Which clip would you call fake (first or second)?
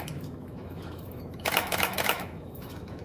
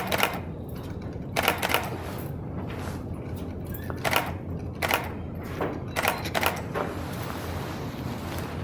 first